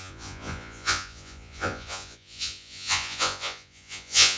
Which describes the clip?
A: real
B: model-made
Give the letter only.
B